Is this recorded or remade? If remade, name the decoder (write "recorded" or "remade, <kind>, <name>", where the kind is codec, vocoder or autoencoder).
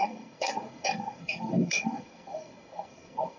remade, codec, SNAC